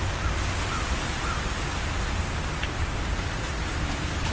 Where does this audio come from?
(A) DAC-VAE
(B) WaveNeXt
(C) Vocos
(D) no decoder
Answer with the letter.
D